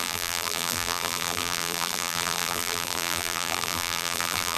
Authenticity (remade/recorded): remade